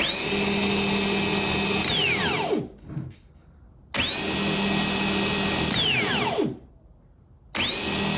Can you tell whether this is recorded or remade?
recorded